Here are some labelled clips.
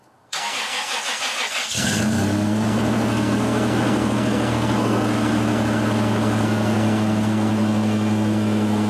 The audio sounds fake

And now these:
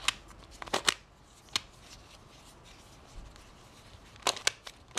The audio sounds real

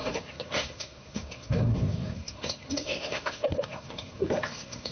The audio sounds fake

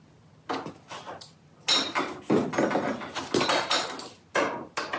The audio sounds real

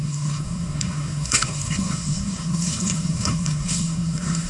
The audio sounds fake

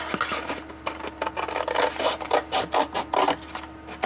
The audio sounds real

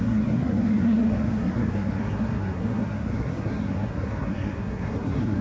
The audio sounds fake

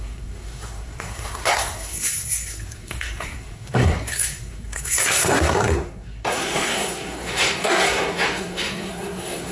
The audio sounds fake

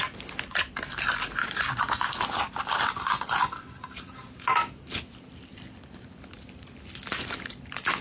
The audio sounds real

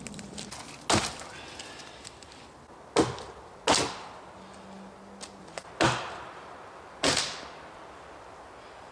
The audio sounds real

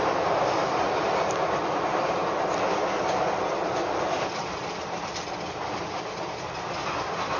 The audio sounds real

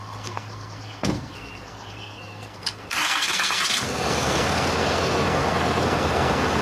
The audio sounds fake